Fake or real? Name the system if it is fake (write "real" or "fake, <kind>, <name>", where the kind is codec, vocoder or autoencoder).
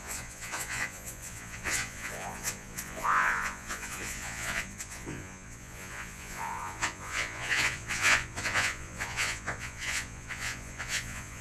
fake, vocoder, Vocos